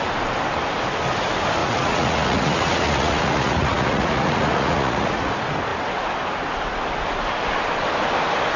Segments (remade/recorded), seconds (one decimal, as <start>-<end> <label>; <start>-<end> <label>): 0.0-1.6 recorded; 1.6-5.3 remade; 5.3-8.6 recorded